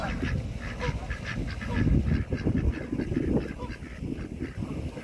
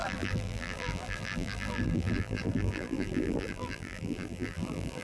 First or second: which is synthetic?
second